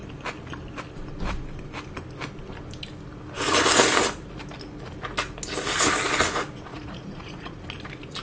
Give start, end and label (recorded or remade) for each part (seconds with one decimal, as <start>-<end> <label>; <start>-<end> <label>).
0.0-6.7 recorded; 6.7-7.6 remade; 7.6-8.2 recorded